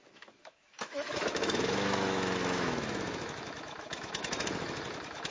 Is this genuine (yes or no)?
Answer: no